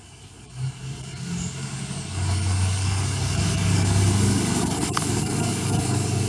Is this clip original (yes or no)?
no